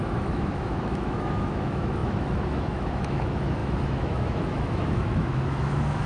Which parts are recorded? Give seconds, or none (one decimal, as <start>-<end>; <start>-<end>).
none